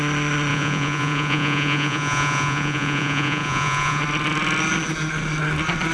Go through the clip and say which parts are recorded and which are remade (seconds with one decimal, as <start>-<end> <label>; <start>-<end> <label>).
0.0-0.5 recorded; 0.5-4.0 remade; 4.0-5.9 recorded